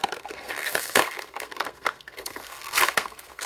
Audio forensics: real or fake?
fake